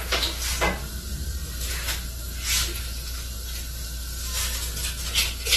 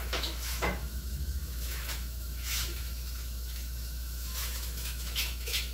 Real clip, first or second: first